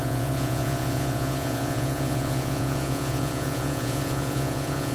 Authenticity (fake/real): fake